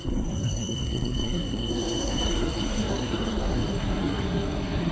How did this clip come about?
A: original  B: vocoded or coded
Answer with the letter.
B